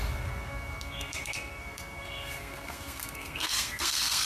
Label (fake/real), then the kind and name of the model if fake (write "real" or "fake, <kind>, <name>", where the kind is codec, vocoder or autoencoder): fake, codec, SNAC